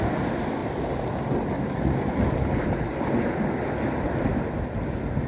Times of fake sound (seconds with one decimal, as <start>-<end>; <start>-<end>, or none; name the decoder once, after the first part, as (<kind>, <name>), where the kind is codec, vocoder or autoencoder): none